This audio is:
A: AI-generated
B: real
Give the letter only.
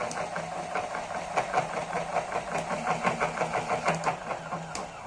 B